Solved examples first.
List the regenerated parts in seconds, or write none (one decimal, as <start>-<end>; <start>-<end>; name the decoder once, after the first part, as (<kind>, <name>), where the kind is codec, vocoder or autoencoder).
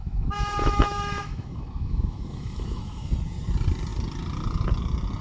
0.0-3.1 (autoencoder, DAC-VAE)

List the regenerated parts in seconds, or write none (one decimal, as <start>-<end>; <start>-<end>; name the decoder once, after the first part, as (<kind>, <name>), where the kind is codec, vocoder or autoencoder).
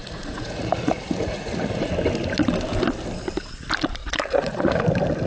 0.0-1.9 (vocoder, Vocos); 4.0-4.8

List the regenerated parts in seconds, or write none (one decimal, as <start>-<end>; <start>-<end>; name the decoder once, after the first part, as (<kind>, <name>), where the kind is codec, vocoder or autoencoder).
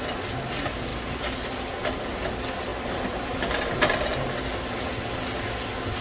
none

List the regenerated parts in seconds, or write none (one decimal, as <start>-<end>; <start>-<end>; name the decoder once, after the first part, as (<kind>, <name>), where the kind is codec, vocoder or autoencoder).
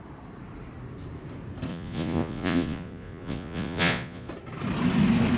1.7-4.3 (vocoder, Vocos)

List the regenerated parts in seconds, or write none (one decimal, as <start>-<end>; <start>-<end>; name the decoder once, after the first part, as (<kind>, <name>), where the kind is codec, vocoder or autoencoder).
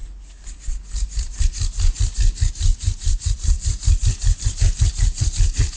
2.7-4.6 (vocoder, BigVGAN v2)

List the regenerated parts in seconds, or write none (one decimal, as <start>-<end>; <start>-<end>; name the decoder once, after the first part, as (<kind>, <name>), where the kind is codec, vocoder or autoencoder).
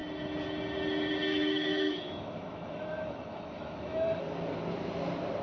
1.3-4.2 (autoencoder, DAC-VAE)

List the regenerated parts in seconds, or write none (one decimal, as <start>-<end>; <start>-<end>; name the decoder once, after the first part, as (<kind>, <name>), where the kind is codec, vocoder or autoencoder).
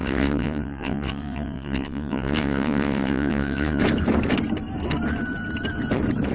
0.0-3.8 (vocoder, WaveNeXt)